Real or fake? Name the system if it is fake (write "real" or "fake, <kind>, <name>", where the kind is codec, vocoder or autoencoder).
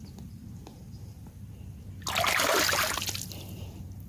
real